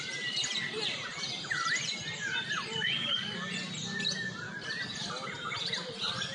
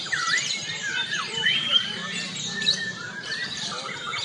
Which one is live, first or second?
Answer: first